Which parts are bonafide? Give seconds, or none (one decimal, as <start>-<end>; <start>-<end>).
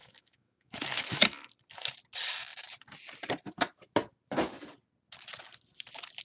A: 1.5-6.2